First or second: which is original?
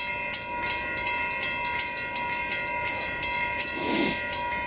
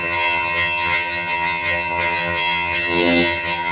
first